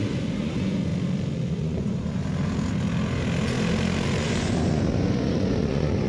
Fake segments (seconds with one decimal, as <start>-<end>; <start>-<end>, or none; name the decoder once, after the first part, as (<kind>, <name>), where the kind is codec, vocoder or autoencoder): 0.0-0.9 (vocoder, Vocos); 1.5-2.2; 4.2-6.1